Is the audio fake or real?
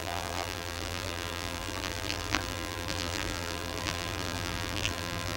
fake